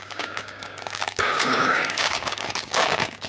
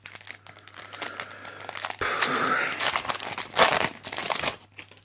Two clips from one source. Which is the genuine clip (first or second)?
second